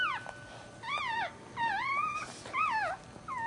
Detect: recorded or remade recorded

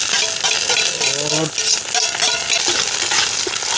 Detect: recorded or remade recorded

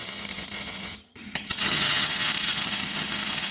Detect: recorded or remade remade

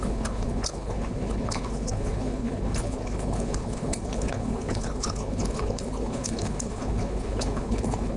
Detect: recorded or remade remade